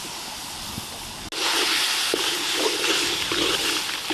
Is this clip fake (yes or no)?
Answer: no